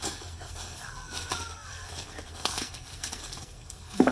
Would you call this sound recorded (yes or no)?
no